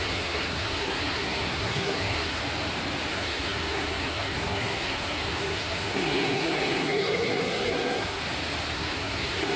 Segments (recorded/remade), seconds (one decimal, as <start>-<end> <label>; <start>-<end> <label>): 0.0-2.4 remade; 2.4-3.1 recorded; 3.1-8.2 remade; 8.2-8.7 recorded; 8.7-9.6 remade